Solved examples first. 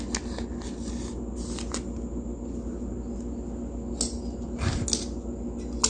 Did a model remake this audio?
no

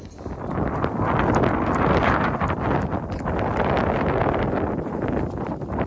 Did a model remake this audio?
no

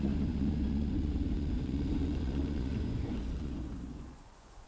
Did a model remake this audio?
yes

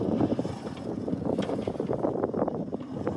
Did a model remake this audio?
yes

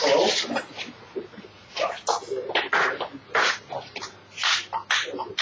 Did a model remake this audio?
no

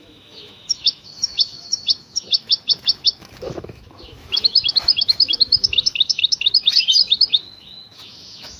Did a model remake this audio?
yes